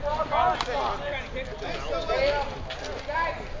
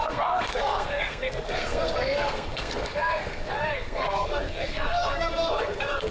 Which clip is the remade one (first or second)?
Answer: second